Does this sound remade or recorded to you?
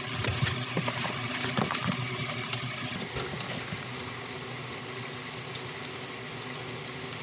recorded